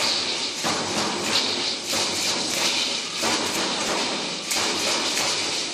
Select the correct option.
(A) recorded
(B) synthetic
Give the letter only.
A